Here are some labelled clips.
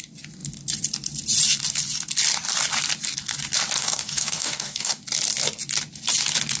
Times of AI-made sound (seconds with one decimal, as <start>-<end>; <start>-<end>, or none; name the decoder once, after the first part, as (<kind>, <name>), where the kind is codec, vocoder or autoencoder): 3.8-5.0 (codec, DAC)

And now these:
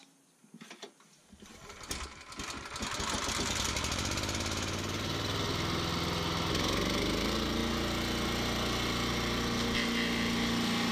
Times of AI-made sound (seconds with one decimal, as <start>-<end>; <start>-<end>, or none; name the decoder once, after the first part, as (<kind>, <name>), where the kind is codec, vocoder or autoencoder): none

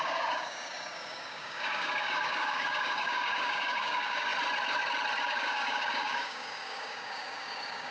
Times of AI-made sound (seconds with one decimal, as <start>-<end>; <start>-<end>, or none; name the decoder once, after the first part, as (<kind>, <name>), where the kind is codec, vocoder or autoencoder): 0.0-4.3 (codec, DAC); 5.2-7.9

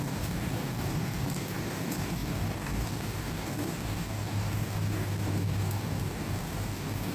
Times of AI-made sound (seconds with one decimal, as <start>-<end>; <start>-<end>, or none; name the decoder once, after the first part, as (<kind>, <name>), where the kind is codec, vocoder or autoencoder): 0.0-7.1 (codec, DAC)

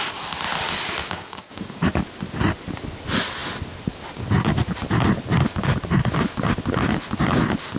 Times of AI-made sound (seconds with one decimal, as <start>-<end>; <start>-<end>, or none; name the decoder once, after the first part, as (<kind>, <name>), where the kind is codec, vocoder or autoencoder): 1.0-1.8 (codec, DAC)

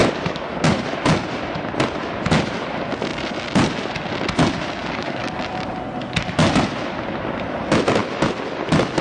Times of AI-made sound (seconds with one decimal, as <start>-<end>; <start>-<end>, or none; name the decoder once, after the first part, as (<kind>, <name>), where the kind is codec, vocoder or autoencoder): 0.0-0.8 (codec, DAC); 4.8-5.4

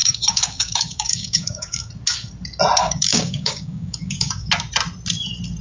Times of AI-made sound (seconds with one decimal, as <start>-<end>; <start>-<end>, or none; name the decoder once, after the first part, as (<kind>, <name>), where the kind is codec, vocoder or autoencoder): 0.0-1.9 (codec, DAC); 2.8-4.5

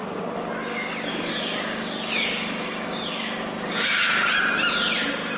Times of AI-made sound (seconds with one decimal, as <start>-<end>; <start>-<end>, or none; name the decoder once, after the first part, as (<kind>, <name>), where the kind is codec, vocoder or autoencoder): 0.7-3.9 (codec, DAC)